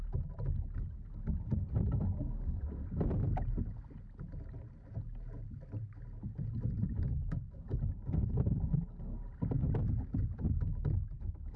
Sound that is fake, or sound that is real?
real